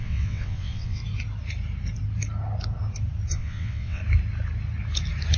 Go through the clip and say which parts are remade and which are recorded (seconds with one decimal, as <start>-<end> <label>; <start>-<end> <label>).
0.0-1.0 remade; 1.0-3.3 recorded; 3.3-4.0 remade; 4.0-5.4 recorded